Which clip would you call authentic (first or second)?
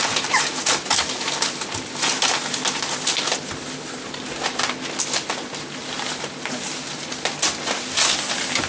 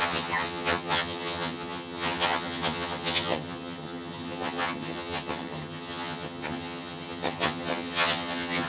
first